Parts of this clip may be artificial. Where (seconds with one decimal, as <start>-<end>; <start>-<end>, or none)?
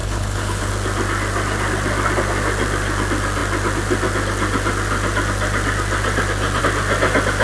0.0-0.7